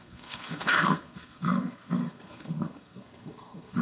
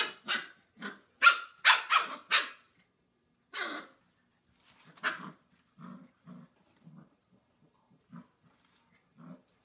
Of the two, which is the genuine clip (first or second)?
second